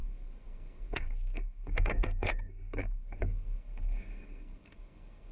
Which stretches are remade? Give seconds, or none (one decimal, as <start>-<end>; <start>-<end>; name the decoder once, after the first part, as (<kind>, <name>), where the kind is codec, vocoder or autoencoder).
0.0-5.3 (codec, SNAC)